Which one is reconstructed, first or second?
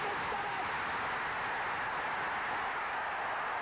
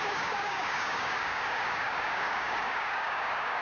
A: second